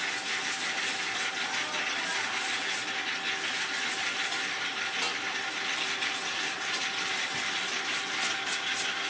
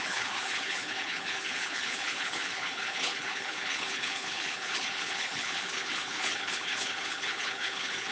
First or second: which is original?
first